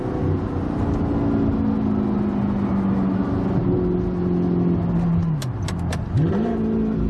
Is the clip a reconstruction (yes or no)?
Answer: no